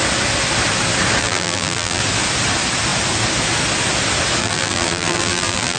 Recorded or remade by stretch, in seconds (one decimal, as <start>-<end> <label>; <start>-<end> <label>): 0.0-1.2 recorded; 1.2-2.0 remade; 2.0-4.4 recorded; 4.4-5.8 remade